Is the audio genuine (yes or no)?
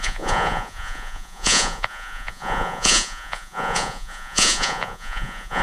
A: no